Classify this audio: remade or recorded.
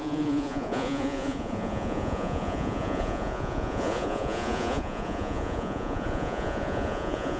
remade